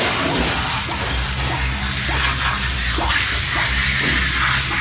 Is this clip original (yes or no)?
yes